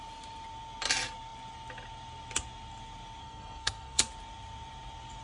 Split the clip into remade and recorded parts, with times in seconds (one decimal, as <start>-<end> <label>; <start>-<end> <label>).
0.0-3.2 recorded; 3.2-4.1 remade; 4.1-5.2 recorded